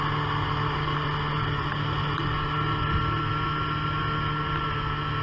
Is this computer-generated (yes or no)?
no